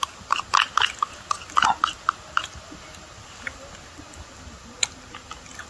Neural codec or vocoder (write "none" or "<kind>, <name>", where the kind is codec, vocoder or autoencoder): none